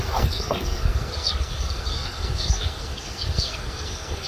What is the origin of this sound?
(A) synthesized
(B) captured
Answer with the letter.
A